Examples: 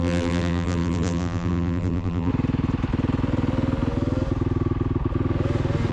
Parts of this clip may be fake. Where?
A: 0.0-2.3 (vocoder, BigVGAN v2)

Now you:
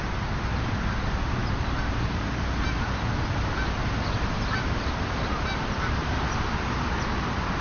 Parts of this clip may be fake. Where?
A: none